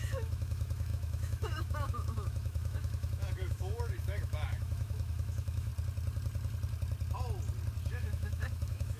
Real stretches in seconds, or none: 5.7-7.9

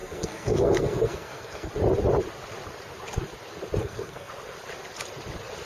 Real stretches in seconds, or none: 1.7-3.8; 4.3-5.7